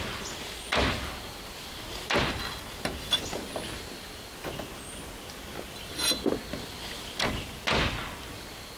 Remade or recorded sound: recorded